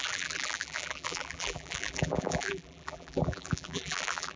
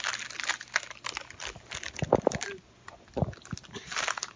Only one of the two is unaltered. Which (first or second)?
second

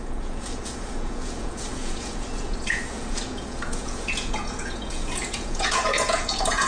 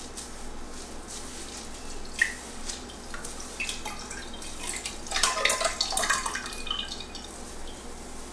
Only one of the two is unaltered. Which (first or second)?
second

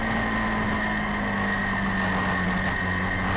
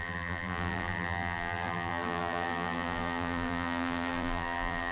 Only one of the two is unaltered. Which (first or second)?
first